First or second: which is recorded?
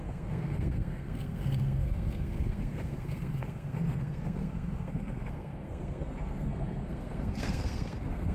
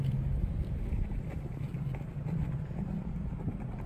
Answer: second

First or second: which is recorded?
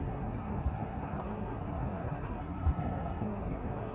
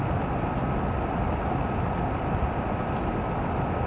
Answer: second